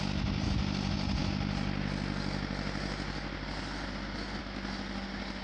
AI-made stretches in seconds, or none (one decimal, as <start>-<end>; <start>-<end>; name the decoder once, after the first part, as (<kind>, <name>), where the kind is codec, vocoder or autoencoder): none